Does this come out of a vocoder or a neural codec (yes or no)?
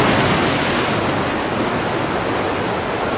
no